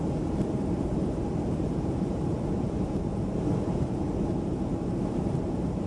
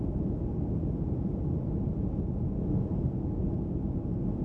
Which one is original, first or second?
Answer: second